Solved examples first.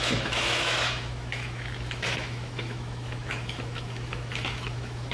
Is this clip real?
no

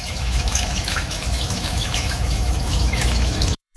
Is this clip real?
no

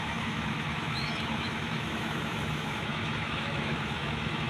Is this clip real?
no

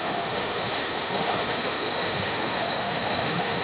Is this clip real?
no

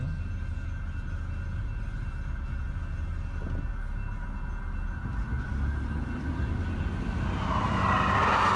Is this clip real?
yes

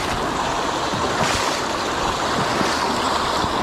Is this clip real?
yes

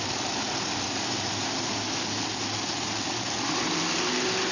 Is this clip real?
yes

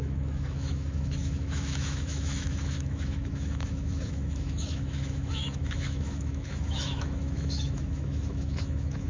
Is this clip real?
no